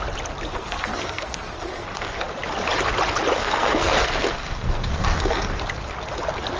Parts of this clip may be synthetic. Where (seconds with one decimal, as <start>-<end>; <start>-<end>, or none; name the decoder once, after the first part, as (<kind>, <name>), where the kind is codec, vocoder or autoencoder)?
0.5-2.2 (codec, SNAC); 3.4-5.6